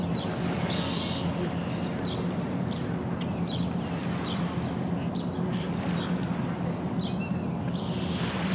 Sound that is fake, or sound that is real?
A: real